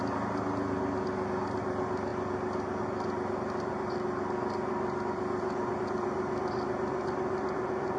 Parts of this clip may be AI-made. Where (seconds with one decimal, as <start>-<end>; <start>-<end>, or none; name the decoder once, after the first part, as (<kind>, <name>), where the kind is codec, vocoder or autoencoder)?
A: none